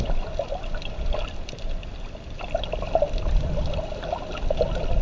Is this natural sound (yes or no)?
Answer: yes